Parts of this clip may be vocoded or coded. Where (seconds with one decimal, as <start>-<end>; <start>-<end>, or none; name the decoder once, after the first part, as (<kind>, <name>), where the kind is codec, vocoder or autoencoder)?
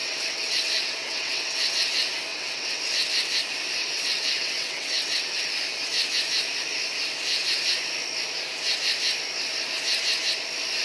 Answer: 0.0-1.7 (vocoder, WaveNeXt); 2.3-2.8; 3.8-5.5